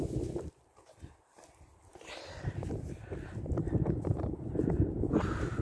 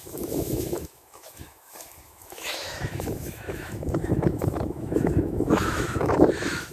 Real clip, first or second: first